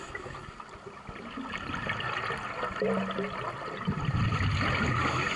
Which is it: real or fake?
real